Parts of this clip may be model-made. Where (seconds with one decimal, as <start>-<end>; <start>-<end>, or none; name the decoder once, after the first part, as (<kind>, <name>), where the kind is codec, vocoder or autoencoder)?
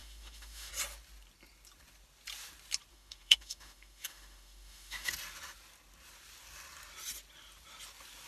0.0-0.7 (autoencoder, DAC-VAE); 2.9-5.1